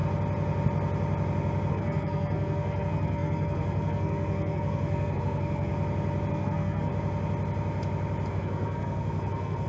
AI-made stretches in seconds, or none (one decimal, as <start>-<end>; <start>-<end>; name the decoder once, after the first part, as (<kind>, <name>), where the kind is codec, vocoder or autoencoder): 1.7-5.7 (codec, SNAC); 6.3-6.9; 8.3-9.7